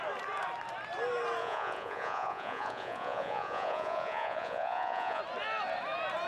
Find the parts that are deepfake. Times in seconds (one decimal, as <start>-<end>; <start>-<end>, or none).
1.4-5.2